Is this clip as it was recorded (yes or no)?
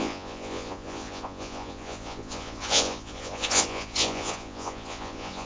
no